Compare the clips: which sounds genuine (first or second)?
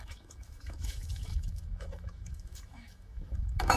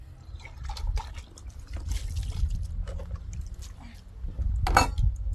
second